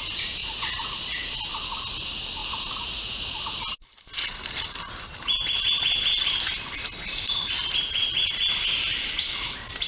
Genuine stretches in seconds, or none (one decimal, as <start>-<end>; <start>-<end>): 0.0-0.4; 1.3-2.4; 3.4-9.9